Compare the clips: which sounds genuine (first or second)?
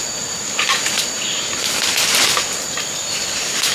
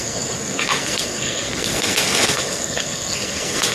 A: first